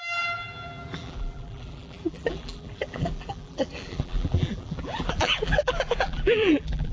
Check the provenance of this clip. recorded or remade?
remade